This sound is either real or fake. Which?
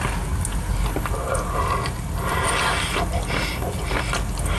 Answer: real